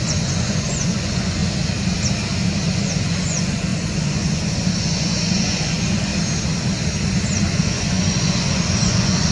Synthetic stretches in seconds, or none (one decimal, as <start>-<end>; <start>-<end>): 0.0-1.4; 2.7-6.1; 7.4-9.3